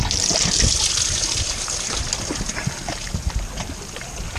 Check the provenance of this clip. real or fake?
real